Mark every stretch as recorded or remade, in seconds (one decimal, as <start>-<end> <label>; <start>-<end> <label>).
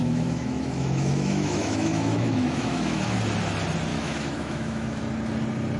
0.0-3.2 remade; 3.2-3.9 recorded; 3.9-5.0 remade; 5.0-5.8 recorded